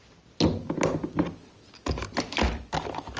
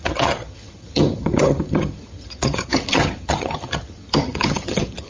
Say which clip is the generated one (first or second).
second